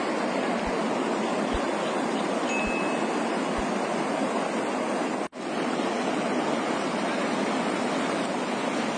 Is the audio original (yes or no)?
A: yes